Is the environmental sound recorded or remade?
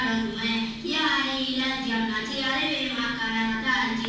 recorded